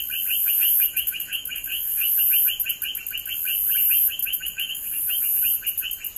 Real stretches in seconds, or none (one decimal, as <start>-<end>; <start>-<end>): 0.0-0.4; 2.2-4.2; 5.2-6.2